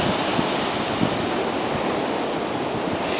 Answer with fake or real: real